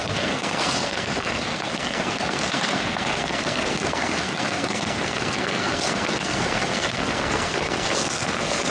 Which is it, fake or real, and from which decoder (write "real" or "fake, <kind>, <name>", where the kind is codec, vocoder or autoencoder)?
fake, codec, SNAC